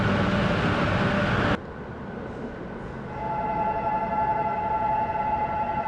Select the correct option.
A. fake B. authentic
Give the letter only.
B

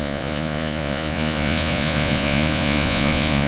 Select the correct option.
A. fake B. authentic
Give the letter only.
A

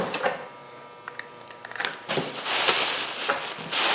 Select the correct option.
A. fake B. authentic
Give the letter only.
B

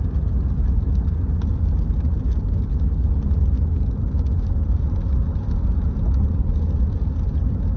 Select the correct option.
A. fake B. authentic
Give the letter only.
B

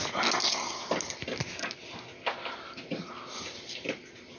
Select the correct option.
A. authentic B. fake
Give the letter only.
A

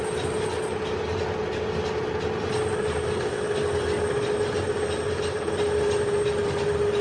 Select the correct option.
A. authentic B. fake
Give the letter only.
A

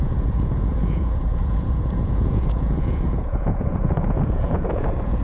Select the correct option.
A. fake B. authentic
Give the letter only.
A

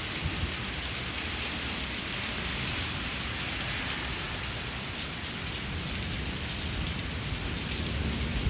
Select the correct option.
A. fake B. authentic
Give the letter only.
B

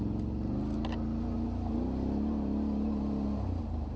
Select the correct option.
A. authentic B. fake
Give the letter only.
A